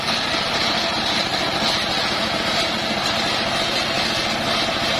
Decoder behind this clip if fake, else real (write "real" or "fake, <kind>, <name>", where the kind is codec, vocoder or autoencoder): real